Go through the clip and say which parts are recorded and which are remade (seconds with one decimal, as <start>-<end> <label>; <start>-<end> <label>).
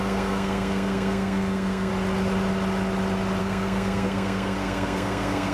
0.0-1.9 remade; 1.9-3.4 recorded; 3.4-5.5 remade